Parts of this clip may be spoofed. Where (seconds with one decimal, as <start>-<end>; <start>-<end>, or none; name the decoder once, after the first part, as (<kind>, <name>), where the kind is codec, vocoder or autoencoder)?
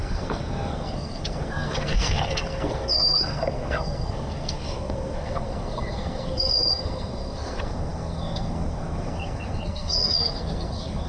0.0-11.1 (codec, SNAC)